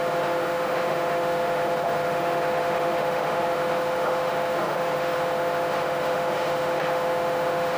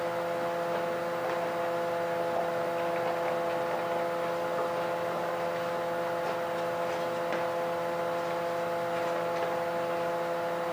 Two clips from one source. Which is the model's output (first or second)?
first